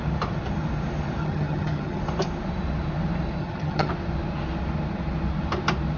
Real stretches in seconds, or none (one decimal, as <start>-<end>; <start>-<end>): 0.0-1.2; 2.0-3.4; 3.9-6.0